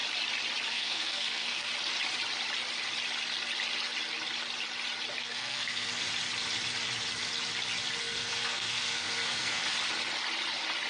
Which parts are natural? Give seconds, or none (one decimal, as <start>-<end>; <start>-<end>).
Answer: 0.0-0.7; 1.7-5.2; 6.0-8.0; 9.6-10.9